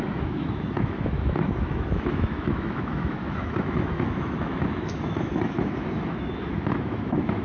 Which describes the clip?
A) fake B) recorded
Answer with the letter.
A